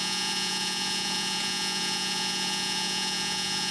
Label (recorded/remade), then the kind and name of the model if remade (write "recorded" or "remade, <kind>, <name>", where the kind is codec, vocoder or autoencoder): remade, vocoder, Vocos